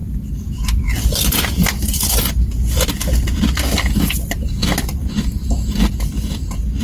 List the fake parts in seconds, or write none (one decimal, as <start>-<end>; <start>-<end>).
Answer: none